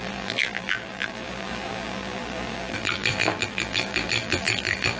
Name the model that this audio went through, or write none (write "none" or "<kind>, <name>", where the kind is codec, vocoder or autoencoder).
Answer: vocoder, BigVGAN v2